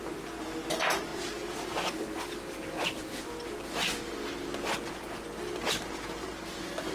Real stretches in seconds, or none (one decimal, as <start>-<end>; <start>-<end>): 0.0-6.9